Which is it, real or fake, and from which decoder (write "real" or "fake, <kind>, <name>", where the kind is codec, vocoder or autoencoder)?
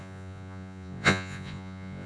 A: fake, vocoder, Vocos